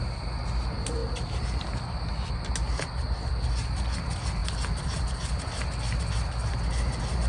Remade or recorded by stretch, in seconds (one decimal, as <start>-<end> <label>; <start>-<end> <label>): 0.0-7.3 recorded